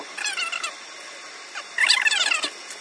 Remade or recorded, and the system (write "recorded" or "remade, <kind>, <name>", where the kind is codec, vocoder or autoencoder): recorded